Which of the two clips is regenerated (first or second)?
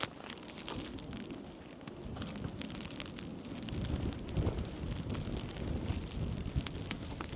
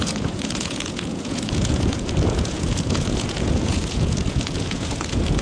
second